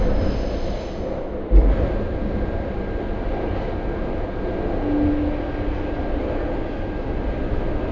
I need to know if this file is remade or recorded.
recorded